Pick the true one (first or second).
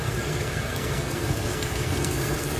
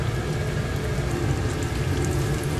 second